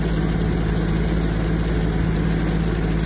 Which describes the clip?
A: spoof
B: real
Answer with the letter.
B